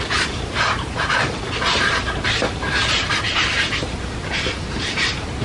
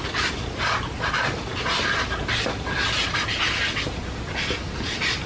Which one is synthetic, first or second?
first